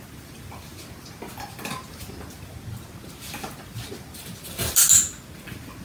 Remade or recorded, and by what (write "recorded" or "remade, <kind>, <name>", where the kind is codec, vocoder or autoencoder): recorded